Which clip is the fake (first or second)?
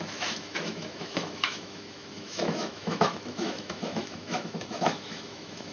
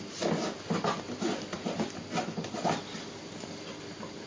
first